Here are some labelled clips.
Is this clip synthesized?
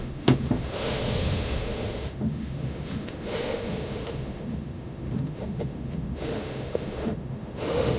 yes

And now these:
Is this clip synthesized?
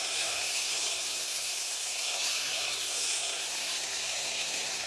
yes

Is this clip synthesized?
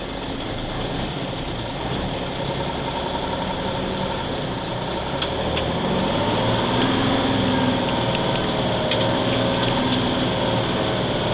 no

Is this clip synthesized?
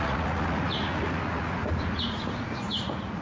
yes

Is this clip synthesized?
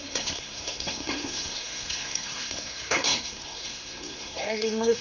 yes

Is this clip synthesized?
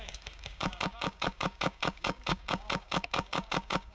yes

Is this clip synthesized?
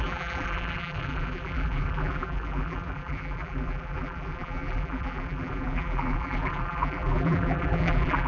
yes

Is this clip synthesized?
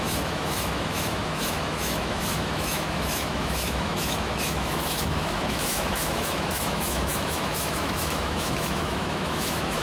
yes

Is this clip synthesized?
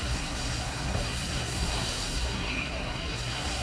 yes